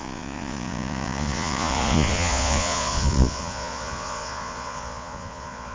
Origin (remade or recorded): remade